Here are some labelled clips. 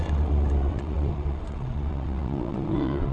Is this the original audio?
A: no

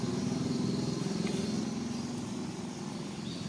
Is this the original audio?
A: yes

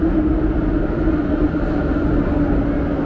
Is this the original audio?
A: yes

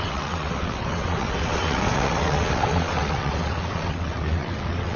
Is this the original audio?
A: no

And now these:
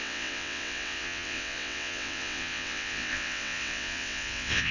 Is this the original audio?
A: no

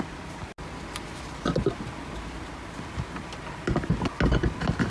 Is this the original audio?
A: yes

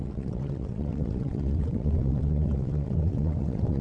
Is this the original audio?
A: no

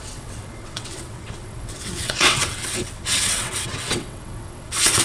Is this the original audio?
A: no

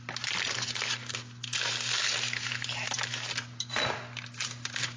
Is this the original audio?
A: yes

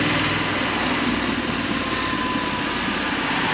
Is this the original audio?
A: yes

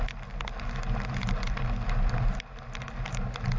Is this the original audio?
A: yes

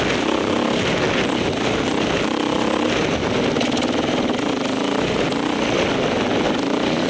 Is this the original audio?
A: yes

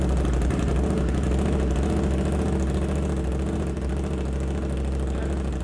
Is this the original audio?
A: yes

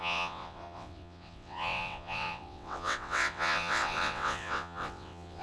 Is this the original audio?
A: no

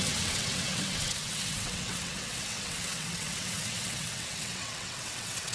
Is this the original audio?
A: no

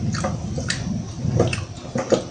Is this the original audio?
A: yes